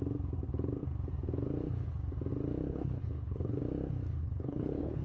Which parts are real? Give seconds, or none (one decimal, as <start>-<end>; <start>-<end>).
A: 0.0-2.7; 3.6-4.2